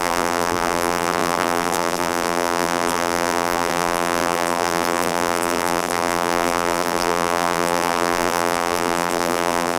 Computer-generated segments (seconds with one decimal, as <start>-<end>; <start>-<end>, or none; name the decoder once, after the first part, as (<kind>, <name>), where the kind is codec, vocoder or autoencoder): 0.0-9.8 (vocoder, BigVGAN v2)